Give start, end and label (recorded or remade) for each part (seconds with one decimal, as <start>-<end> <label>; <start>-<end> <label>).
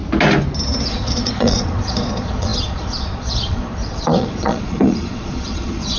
0.0-0.9 recorded; 0.9-6.0 remade